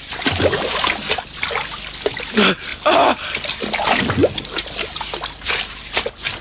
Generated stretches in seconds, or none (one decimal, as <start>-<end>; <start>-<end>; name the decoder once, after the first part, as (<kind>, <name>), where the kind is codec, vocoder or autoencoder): 2.7-3.6 (vocoder, BigVGAN v2)